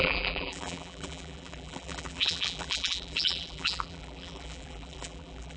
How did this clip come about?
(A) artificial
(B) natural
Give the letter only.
A